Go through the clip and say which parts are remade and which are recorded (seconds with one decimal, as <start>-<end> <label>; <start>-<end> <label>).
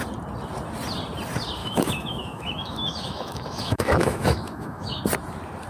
0.0-1.6 recorded; 1.6-5.0 remade; 5.0-5.7 recorded